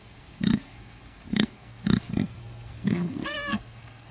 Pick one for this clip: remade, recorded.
remade